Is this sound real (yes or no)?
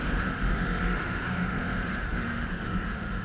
no